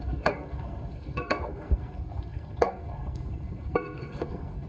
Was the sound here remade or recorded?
remade